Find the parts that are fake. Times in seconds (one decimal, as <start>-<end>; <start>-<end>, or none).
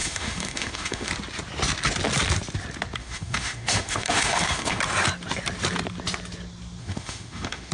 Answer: 0.0-1.1; 3.0-4.8; 6.8-7.7